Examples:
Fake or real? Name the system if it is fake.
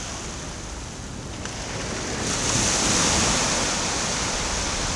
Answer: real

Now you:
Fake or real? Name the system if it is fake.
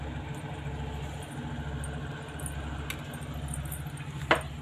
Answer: real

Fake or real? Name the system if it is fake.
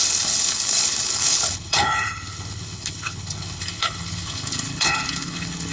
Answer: fake, codec, HILCodec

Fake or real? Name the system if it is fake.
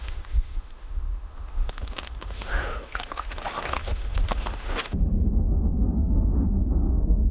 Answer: fake, autoencoder, DAC-VAE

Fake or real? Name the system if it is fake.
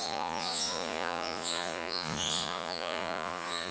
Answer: fake, vocoder, Vocos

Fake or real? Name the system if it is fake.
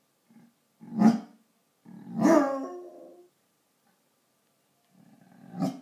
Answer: real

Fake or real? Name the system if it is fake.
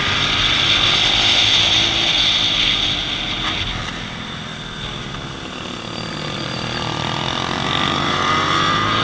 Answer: real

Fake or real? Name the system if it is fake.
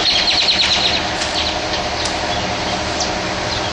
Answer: real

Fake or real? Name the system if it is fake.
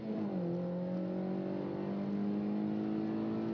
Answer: real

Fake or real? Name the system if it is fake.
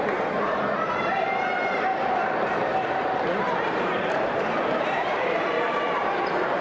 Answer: fake, vocoder, BigVGAN v2